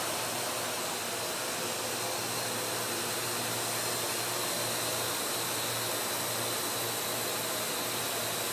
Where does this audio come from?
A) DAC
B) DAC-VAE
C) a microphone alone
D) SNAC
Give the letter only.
C